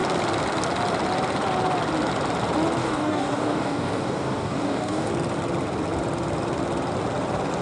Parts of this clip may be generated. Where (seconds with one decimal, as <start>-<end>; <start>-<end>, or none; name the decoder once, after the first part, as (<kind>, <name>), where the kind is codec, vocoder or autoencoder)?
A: 2.8-5.1 (codec, DAC)